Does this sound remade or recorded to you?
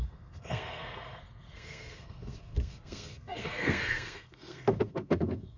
remade